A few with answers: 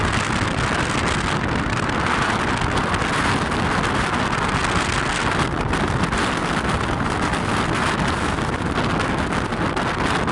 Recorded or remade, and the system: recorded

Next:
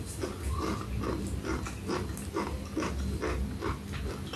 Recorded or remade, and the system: recorded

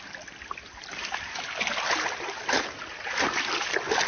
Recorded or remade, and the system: recorded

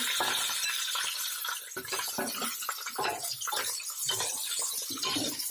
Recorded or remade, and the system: recorded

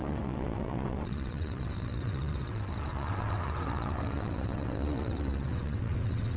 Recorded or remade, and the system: remade, vocoder, WaveNeXt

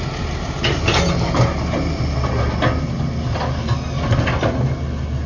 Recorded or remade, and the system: recorded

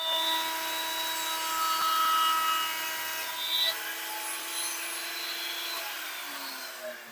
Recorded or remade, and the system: recorded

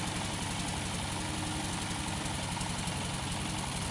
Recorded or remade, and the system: recorded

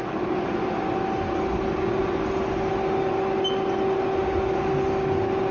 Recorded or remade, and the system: recorded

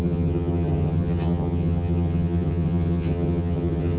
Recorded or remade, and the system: remade, vocoder, HiFi-GAN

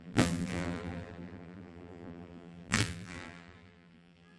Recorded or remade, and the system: remade, vocoder, BigVGAN v2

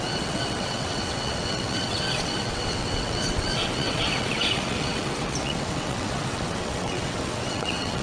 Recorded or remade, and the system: remade, vocoder, WaveNeXt